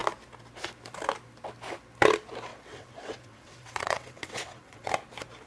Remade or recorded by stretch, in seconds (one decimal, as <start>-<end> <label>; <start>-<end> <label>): 0.0-2.5 recorded; 2.5-4.9 remade; 4.9-5.5 recorded